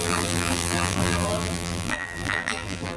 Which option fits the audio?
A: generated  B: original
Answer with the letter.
A